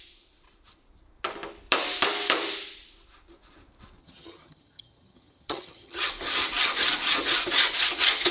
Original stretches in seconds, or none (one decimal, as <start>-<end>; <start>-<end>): 0.0-4.0; 6.1-8.3